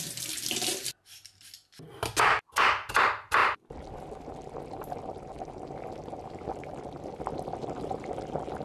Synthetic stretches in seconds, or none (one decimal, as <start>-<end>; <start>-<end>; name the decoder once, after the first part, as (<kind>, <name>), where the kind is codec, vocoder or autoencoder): none